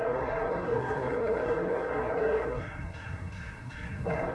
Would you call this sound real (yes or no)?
no